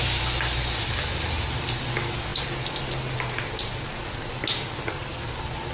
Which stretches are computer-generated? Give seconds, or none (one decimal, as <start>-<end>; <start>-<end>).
none